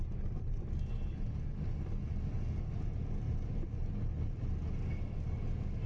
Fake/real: real